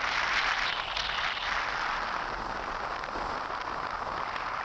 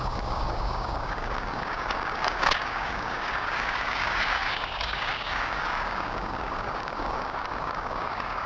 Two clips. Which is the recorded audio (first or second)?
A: first